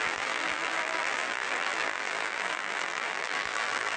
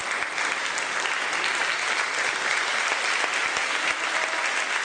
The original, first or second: second